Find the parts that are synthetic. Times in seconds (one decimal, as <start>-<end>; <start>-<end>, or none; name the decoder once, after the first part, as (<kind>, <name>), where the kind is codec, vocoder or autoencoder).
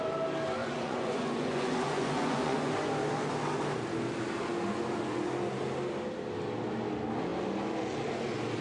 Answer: 0.6-2.7 (vocoder, Vocos)